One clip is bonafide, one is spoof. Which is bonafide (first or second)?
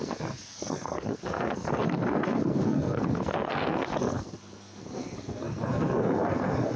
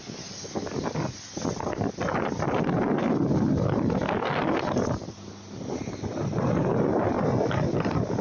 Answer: second